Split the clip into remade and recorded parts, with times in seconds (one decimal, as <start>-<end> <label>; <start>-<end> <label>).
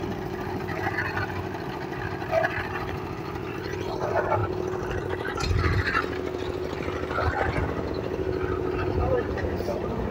0.0-4.4 recorded; 4.4-7.9 remade; 7.9-10.1 recorded